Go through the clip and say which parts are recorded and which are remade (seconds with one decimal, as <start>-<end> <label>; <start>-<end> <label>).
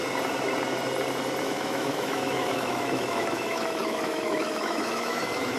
0.0-1.4 recorded; 1.4-5.6 remade